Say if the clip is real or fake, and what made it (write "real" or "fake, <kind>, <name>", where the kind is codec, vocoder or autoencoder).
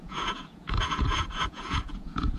fake, vocoder, Vocos